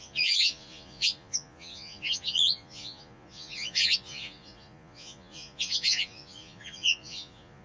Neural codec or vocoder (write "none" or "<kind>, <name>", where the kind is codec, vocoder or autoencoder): vocoder, Vocos